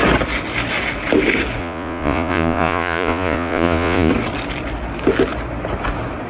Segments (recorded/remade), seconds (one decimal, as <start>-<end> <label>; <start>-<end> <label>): 0.0-1.6 recorded; 1.6-4.1 remade; 4.1-6.3 recorded